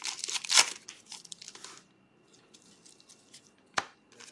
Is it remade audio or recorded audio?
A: recorded